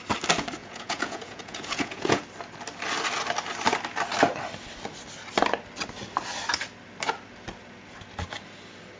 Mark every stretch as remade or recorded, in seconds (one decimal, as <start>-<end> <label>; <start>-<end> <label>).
0.0-0.6 recorded; 0.6-2.2 remade; 2.2-9.0 recorded